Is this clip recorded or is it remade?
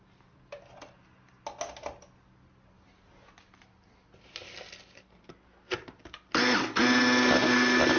recorded